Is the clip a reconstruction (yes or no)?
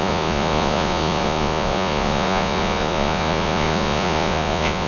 yes